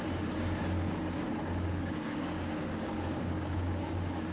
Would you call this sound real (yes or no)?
no